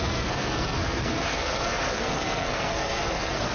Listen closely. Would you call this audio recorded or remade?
remade